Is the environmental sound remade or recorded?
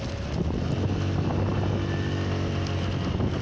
recorded